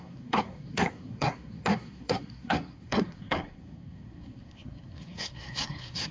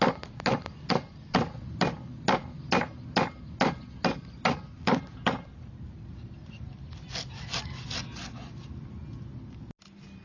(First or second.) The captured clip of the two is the second